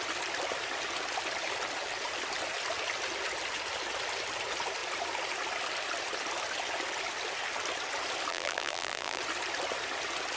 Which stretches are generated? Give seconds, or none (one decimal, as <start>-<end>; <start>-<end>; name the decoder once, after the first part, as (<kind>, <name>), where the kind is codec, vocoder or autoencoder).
8.3-9.2 (vocoder, BigVGAN v2)